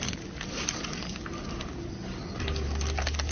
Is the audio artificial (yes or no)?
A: no